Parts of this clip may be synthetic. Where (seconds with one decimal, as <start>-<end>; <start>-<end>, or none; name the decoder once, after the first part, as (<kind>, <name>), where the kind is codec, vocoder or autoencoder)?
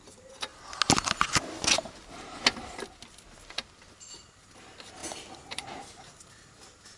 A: 0.0-0.5 (vocoder, BigVGAN v2); 4.0-5.0; 5.5-7.0